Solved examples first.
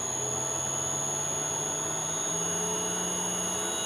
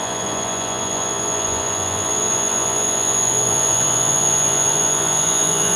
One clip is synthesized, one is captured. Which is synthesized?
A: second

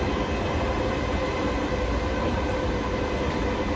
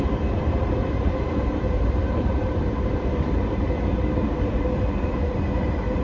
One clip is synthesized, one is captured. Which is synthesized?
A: second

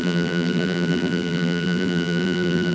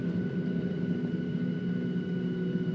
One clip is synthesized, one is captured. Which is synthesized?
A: first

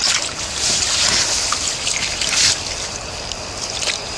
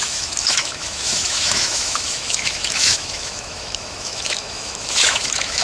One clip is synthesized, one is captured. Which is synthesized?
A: second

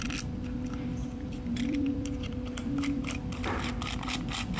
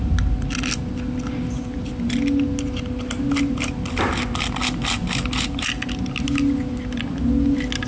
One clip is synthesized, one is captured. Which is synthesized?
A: first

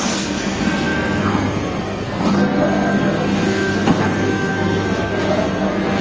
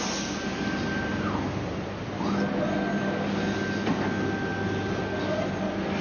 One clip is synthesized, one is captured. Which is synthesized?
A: first